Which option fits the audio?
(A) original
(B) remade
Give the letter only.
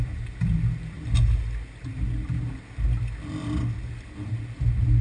A